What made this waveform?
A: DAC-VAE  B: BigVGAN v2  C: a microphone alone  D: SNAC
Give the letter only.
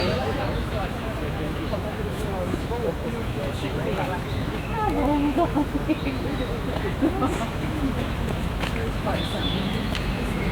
A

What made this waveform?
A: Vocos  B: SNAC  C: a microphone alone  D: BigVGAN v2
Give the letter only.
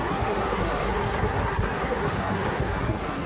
B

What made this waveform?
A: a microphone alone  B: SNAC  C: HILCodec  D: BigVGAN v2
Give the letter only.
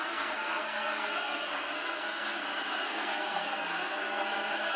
B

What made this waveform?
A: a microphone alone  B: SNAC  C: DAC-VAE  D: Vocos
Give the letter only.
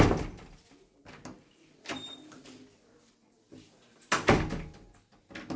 A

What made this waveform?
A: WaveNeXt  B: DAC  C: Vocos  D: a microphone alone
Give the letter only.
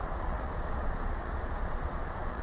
C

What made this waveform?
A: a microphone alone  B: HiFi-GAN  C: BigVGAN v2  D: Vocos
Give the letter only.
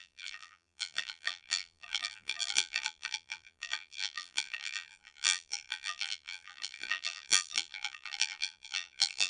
C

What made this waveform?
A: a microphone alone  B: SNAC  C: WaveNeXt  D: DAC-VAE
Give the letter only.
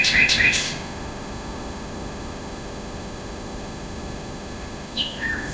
D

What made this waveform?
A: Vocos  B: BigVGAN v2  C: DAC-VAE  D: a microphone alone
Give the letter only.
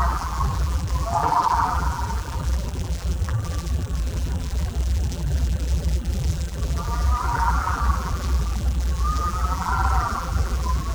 B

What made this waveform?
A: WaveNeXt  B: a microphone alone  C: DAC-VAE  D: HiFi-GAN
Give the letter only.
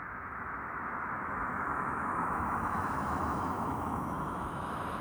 C